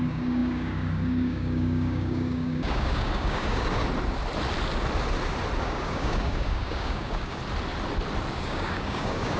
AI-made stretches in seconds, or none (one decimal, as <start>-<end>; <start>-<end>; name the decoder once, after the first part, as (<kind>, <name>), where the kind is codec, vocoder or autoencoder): 0.0-3.8 (codec, DAC); 5.6-7.4; 8.3-9.4